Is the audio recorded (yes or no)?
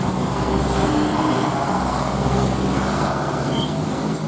no